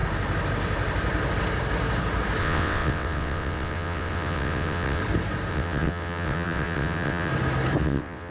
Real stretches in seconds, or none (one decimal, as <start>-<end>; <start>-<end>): 0.0-2.4; 5.0-5.5; 7.3-7.8